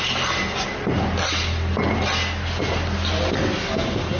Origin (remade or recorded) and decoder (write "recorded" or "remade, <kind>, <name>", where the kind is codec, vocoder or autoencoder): recorded